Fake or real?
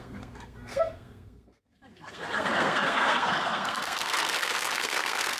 fake